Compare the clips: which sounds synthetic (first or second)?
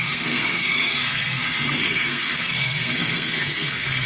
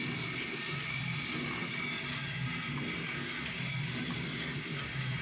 first